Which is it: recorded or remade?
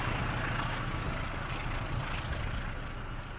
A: recorded